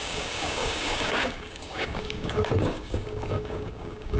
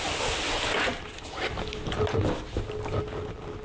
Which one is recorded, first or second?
second